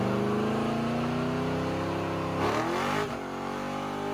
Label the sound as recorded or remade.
recorded